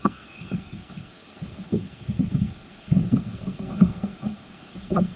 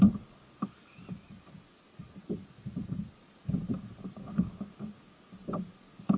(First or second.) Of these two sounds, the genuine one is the second